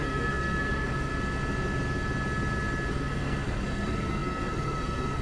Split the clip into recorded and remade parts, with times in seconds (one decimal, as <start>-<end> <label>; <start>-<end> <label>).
0.0-1.1 remade; 1.1-2.9 recorded; 2.9-5.2 remade